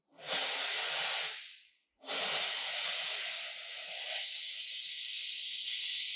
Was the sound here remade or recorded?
recorded